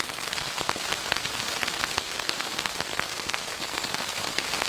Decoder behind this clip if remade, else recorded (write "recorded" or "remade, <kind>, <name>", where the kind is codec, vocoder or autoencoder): remade, codec, SNAC